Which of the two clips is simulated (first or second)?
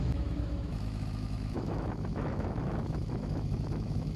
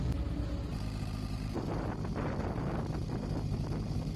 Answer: first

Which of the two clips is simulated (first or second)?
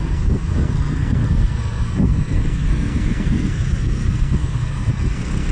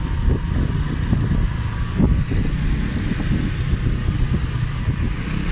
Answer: first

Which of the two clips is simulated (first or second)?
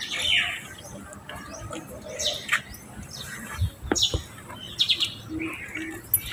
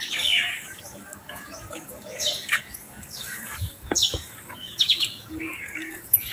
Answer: second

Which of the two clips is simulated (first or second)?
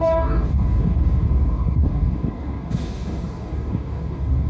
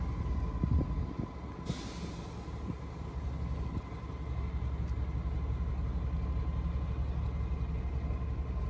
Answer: first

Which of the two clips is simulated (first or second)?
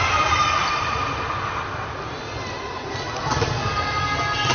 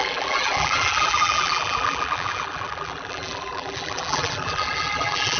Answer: second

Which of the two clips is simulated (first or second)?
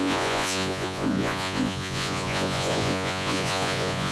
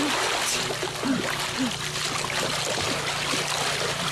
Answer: first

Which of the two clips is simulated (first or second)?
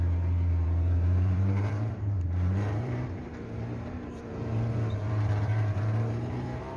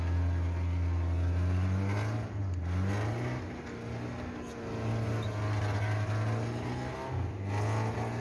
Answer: first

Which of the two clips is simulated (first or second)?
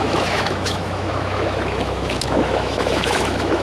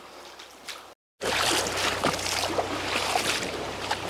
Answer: first